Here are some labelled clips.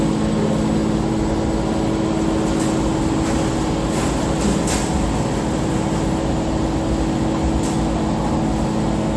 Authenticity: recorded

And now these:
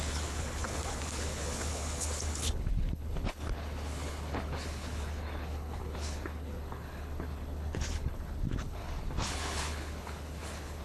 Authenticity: remade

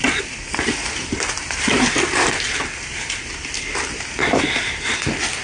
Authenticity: recorded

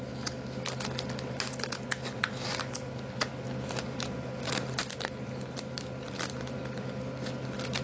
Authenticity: recorded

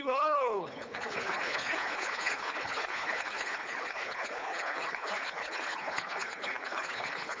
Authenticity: remade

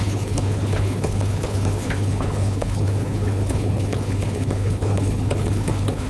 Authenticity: remade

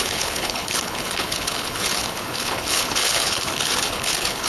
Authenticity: remade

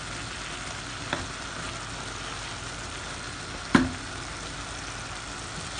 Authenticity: recorded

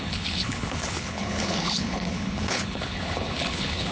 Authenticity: remade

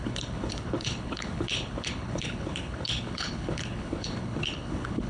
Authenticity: remade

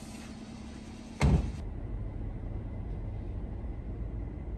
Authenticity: recorded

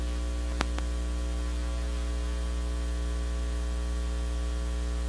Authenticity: recorded